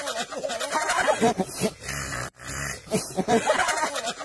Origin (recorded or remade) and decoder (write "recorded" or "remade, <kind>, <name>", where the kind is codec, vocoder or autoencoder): recorded